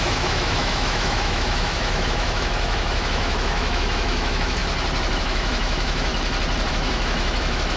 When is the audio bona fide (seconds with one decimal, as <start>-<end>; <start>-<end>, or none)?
4.6-5.2; 6.1-6.7